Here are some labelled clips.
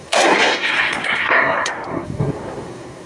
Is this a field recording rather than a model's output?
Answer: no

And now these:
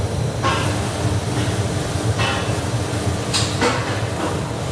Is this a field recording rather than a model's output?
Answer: no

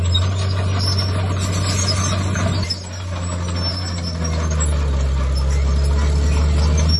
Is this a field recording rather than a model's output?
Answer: yes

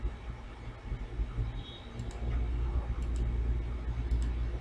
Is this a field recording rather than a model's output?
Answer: yes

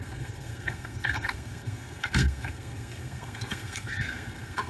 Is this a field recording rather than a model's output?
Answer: no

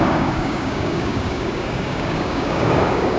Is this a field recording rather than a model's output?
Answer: no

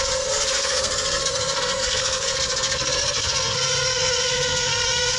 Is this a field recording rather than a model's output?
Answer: no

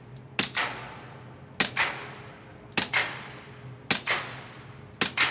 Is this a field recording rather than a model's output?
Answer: yes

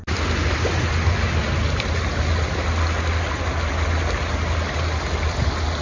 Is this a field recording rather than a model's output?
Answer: yes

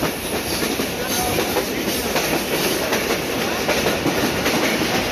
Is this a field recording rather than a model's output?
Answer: yes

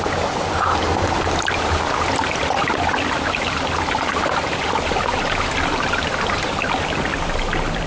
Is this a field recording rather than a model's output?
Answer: yes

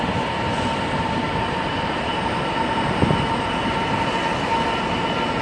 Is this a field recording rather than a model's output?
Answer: yes